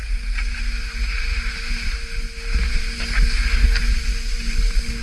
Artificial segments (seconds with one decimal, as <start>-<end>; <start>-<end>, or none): none